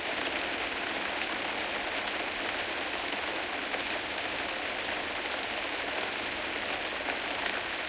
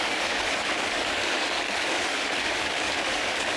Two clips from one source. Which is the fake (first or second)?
second